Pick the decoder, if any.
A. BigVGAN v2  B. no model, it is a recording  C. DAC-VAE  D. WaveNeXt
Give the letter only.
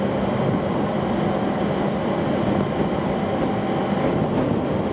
B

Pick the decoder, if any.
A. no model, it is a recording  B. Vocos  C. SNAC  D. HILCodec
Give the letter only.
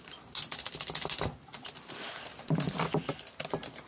A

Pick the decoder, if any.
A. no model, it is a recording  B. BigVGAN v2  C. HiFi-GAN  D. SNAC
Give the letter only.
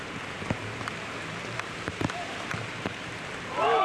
B